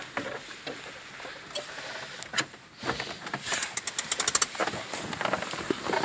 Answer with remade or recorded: recorded